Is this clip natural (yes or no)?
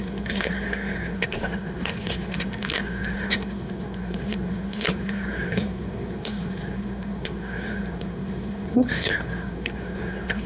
no